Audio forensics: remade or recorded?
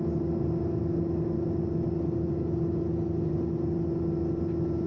recorded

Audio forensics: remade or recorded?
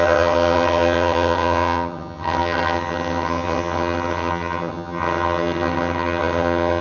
remade